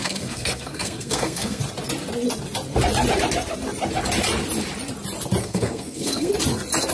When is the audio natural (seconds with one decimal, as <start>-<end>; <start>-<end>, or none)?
1.6-5.4; 6.3-6.9